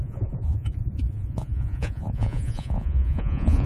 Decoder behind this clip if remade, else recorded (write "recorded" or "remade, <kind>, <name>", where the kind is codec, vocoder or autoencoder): remade, vocoder, Vocos